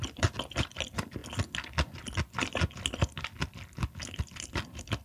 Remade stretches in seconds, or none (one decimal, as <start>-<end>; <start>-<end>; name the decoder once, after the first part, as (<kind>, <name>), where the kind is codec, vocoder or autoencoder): 0.0-1.2 (vocoder, BigVGAN v2); 4.2-5.0